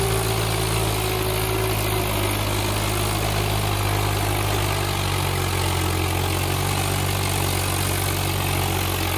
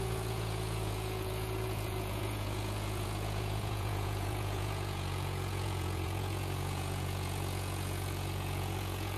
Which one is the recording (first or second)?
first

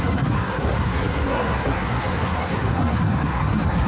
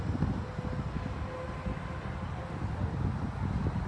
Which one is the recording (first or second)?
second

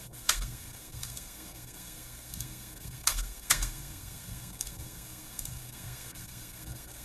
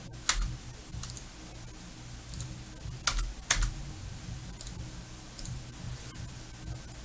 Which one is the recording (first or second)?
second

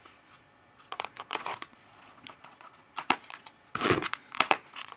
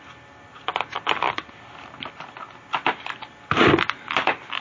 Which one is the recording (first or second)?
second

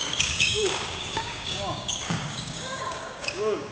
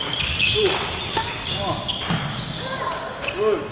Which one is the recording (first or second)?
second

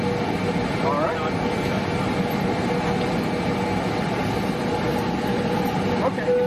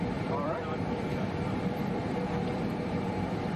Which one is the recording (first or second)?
first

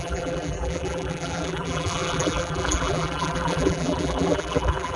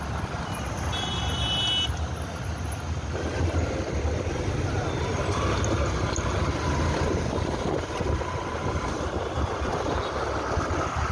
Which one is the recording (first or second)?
second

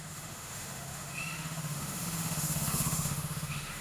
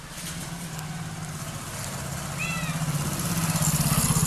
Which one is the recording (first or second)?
second